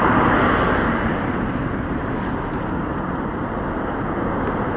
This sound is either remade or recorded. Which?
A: recorded